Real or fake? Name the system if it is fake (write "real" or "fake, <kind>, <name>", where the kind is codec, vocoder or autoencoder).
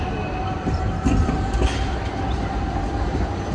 real